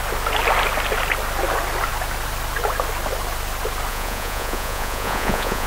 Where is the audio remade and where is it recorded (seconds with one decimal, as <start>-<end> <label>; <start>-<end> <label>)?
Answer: 0.0-3.9 recorded; 3.9-5.7 remade